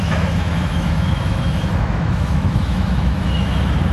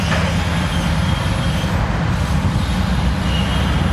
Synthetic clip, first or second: first